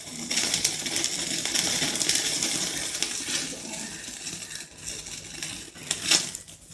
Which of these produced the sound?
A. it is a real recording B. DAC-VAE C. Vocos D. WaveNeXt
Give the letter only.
A